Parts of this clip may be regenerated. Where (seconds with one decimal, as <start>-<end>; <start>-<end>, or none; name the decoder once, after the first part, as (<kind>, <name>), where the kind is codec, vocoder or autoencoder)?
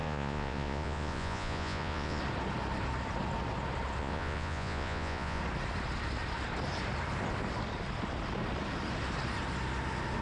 0.0-2.2 (vocoder, Vocos); 4.0-5.4